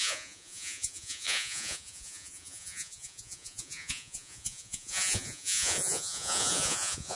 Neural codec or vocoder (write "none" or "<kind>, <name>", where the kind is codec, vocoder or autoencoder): vocoder, Vocos